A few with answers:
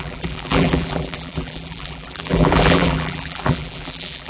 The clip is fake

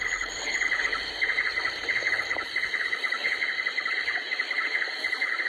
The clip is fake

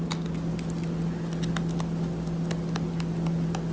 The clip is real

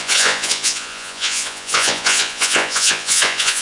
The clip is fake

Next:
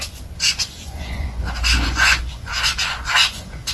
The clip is fake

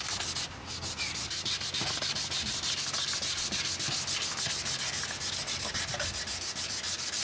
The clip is real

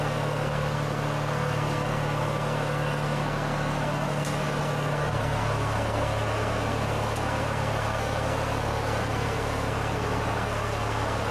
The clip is fake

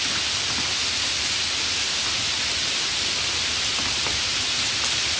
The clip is real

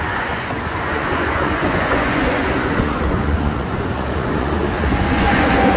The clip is fake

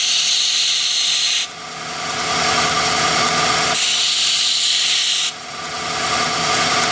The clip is real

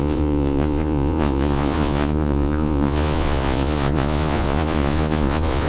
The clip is fake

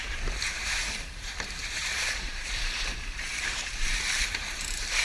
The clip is fake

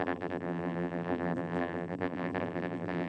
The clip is fake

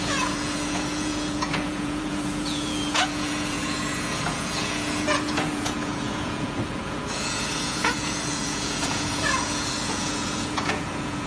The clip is fake